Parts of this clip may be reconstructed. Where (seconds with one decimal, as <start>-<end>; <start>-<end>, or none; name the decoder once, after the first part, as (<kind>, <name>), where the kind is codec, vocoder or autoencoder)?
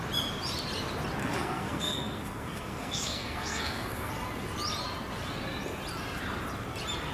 1.2-4.1 (codec, SNAC)